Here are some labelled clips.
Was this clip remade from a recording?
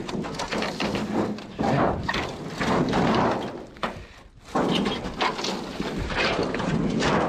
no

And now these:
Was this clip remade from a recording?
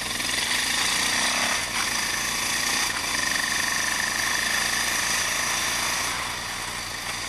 no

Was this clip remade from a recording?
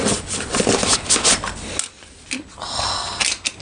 no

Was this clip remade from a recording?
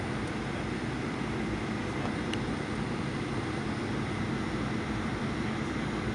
no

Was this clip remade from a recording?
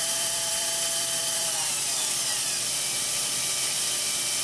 yes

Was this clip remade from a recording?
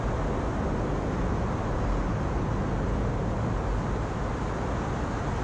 no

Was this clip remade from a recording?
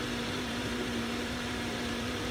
yes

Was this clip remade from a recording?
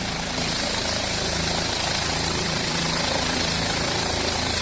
yes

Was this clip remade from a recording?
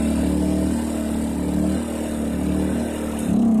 no